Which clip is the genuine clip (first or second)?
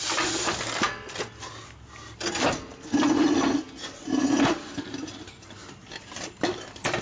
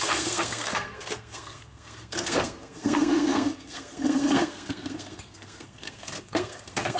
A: first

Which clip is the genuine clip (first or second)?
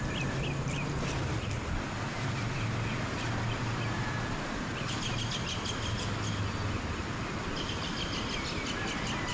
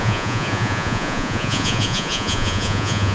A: first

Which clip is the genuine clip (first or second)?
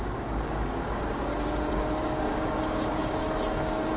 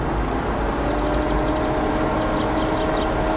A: second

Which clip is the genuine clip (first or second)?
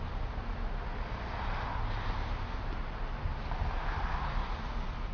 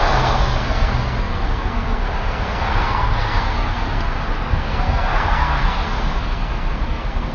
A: first